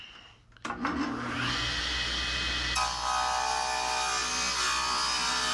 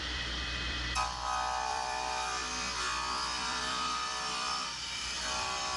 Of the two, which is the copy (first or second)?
second